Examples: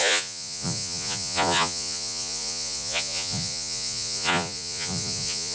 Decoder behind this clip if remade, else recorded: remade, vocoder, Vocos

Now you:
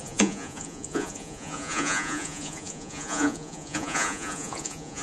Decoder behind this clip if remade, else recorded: remade, vocoder, Vocos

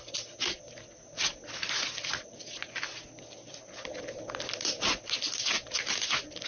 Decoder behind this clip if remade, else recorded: recorded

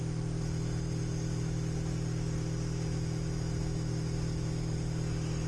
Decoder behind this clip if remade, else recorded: recorded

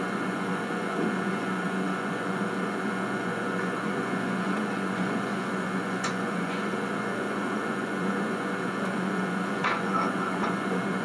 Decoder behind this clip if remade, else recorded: remade, vocoder, Vocos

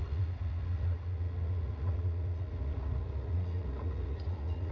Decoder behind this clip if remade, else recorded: remade, vocoder, Vocos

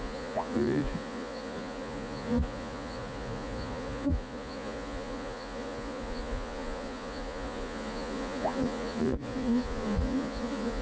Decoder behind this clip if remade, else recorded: remade, vocoder, Vocos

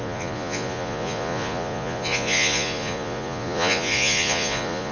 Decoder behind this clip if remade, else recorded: remade, vocoder, Vocos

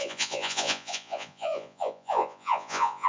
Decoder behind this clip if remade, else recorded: remade, vocoder, Vocos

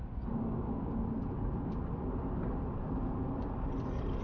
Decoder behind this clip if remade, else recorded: recorded